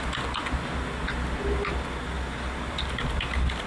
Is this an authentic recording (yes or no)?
yes